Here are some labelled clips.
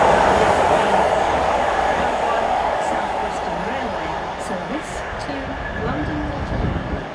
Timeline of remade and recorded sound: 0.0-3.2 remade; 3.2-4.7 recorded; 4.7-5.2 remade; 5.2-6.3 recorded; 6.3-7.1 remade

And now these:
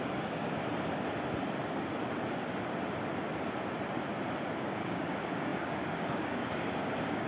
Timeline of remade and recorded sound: 0.0-0.6 remade; 0.6-4.6 recorded; 4.6-7.3 remade